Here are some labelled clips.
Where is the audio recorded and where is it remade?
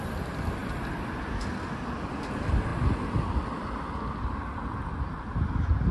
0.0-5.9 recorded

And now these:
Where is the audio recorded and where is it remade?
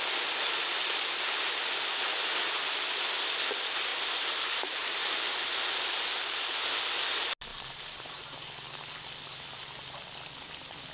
0.0-3.9 recorded; 3.9-5.1 remade; 5.1-7.5 recorded; 7.5-8.2 remade; 8.2-10.9 recorded